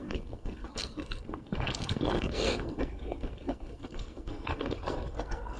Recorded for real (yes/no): no